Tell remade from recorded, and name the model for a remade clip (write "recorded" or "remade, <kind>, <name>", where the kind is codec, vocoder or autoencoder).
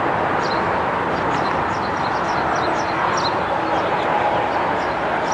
recorded